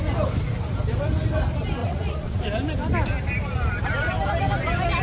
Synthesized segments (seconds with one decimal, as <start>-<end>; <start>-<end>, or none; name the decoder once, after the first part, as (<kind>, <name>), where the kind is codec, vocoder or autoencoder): 1.8-2.4 (vocoder, Vocos)